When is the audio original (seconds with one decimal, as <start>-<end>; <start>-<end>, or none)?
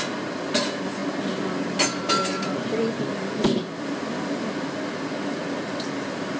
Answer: 0.0-6.4